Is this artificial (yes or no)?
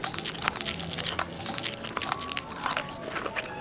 no